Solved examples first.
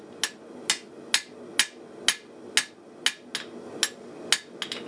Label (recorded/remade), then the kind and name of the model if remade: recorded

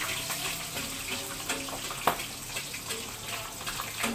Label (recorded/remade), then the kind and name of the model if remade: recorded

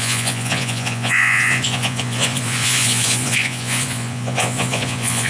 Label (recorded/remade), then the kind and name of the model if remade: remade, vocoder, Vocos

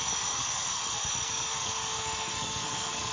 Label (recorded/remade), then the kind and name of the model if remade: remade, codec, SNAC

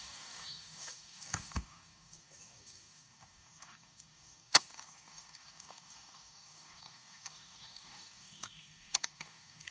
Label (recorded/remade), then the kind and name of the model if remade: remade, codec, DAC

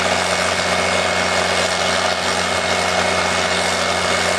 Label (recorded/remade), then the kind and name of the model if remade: recorded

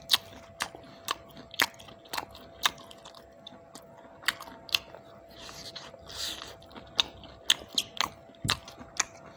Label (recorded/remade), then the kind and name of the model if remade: recorded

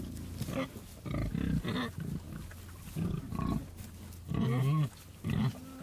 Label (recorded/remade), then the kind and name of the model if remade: recorded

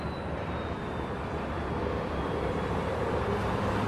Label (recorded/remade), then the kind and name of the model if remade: recorded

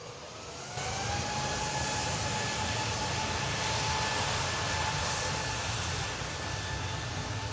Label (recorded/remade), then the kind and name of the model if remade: recorded